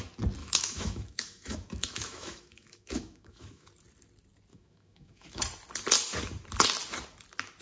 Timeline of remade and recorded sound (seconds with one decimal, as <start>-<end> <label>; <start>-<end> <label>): 0.0-0.4 recorded; 0.4-3.7 remade; 3.7-4.5 recorded; 4.5-5.4 remade; 5.4-7.6 recorded